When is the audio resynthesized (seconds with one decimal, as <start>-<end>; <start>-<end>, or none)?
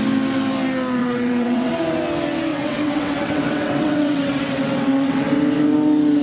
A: 1.0-1.7; 2.5-5.3